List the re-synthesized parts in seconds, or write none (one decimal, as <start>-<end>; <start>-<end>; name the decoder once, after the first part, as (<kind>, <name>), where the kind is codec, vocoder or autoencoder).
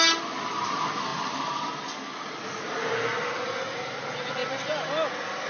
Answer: none